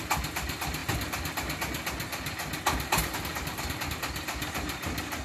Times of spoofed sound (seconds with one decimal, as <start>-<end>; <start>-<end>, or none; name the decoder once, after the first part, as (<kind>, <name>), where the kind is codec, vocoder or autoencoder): none